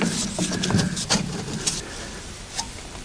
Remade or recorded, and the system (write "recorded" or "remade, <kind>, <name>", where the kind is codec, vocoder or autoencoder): recorded